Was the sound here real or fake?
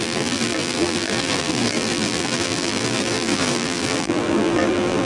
fake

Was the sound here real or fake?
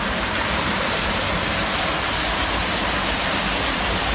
fake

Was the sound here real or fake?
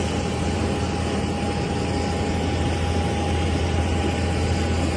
real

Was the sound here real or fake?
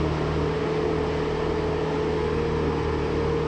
real